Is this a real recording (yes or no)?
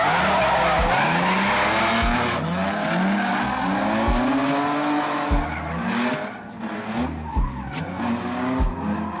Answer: yes